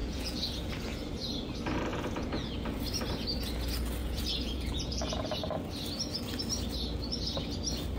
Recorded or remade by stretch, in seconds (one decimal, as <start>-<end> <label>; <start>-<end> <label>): 0.0-0.7 remade; 0.7-1.9 recorded; 1.9-2.5 remade; 2.5-4.0 recorded; 4.0-5.3 remade; 5.3-8.0 recorded